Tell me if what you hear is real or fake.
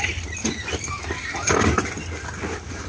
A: real